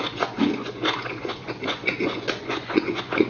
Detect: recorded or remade remade